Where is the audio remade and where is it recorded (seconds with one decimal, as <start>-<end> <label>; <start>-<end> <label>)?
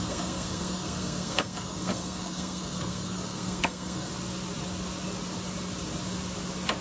0.0-4.1 remade; 4.1-6.8 recorded